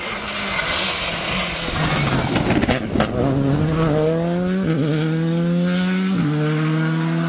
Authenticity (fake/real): real